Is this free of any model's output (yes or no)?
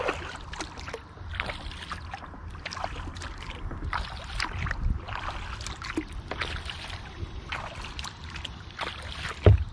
yes